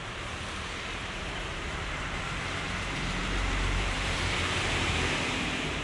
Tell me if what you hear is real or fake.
fake